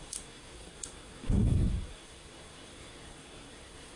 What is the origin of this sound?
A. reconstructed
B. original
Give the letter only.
A